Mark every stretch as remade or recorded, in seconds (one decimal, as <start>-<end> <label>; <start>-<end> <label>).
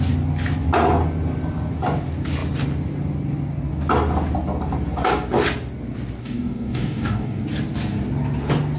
0.0-6.2 recorded; 6.2-7.4 remade; 7.4-8.8 recorded